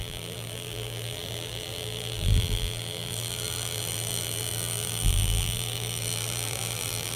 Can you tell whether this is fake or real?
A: fake